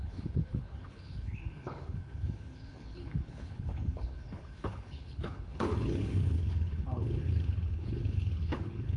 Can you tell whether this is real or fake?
fake